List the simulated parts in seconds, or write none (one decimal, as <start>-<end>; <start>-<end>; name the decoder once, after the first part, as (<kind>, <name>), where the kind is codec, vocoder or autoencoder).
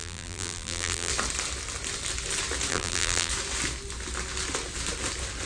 0.0-1.1 (vocoder, BigVGAN v2); 2.7-3.3